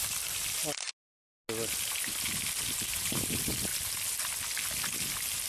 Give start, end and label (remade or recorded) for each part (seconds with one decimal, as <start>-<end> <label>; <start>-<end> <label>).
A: 0.0-0.6 remade; 0.6-2.9 recorded; 2.9-3.7 remade; 3.7-5.5 recorded